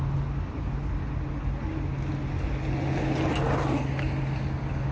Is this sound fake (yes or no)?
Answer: no